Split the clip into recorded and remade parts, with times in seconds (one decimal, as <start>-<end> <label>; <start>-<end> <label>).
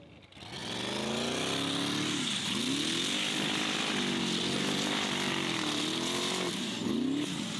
0.0-7.6 recorded